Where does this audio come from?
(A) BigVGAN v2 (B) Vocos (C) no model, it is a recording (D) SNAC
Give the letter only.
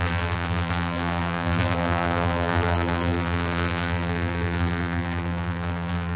A